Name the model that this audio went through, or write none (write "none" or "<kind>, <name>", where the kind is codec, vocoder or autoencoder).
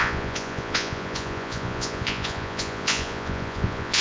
vocoder, Vocos